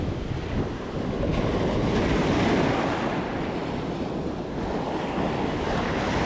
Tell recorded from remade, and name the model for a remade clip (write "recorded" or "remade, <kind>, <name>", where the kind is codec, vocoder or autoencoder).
recorded